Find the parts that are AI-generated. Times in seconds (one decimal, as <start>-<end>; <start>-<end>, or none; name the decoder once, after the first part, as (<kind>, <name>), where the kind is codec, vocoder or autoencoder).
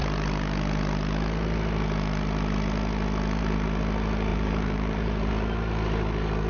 4.3-5.3 (vocoder, BigVGAN v2)